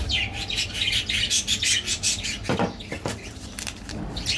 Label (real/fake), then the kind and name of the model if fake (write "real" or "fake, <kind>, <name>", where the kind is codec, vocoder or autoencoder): fake, vocoder, BigVGAN v2